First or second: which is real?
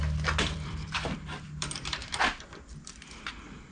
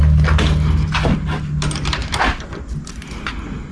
second